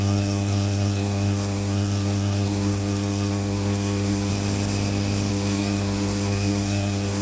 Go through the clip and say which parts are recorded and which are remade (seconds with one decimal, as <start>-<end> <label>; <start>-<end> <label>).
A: 0.0-4.3 remade; 4.3-5.3 recorded; 5.3-7.2 remade